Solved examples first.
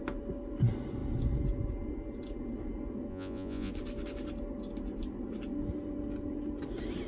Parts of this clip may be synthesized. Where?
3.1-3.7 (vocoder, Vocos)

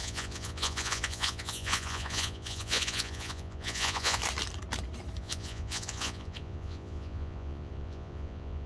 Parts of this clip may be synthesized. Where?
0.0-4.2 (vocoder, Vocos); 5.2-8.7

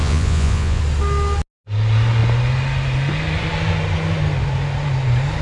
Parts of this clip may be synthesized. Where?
0.0-0.8 (vocoder, Vocos)

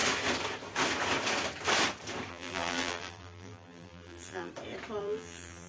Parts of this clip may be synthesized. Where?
2.3-4.5 (vocoder, BigVGAN v2); 5.0-5.7